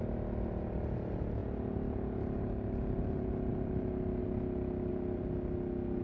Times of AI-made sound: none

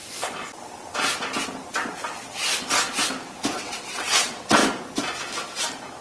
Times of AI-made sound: 3.6-4.6 (vocoder, WaveNeXt)

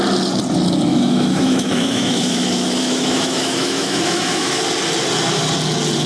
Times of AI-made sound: 0.9-4.6 (autoencoder, DAC-VAE)

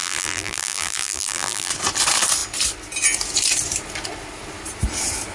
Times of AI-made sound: 0.0-1.7 (vocoder, BigVGAN v2)

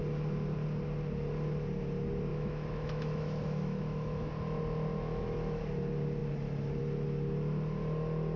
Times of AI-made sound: 2.3-4.3 (autoencoder, DAC-VAE); 4.9-5.6

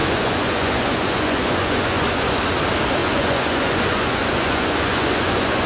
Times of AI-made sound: 0.0-2.4 (vocoder, Vocos); 3.0-5.7